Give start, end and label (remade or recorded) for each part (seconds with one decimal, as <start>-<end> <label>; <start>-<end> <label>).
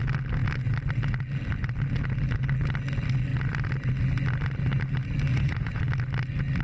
0.0-5.3 recorded; 5.3-5.8 remade; 5.8-6.6 recorded